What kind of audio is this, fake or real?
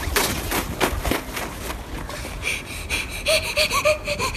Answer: real